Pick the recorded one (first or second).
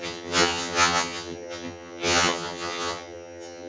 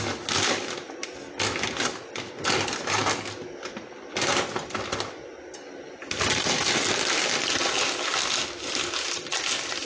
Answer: second